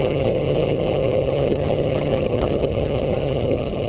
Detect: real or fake fake